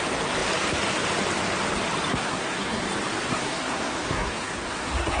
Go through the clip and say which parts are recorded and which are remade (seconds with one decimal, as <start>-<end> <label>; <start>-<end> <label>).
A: 0.0-2.1 recorded; 2.1-2.8 remade; 2.8-3.3 recorded; 3.3-5.2 remade